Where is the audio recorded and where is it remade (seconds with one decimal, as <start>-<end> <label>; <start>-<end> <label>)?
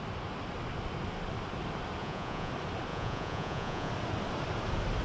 0.0-2.0 recorded; 2.0-2.5 remade; 2.5-2.9 recorded; 2.9-3.9 remade; 3.9-5.0 recorded